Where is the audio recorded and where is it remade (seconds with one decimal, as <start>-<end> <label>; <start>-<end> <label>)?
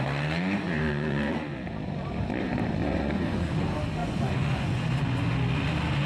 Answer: 0.0-0.8 recorded; 0.8-1.5 remade; 1.5-2.8 recorded; 2.8-3.6 remade; 3.6-4.0 recorded; 4.0-4.8 remade; 4.8-6.1 recorded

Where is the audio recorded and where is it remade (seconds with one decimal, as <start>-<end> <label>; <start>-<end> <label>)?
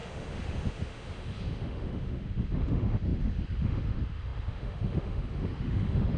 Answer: 0.0-6.2 remade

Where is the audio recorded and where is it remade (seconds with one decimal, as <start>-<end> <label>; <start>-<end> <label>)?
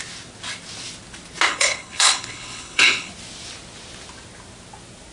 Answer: 0.0-1.5 recorded; 1.5-3.1 remade; 3.1-5.1 recorded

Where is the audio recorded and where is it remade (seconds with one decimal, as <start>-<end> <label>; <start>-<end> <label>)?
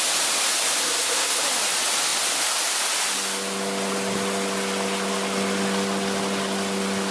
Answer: 0.0-0.8 recorded; 0.8-1.4 remade; 1.4-7.1 recorded